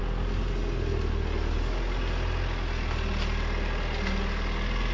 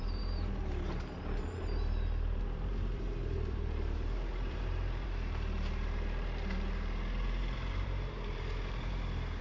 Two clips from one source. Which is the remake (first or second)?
second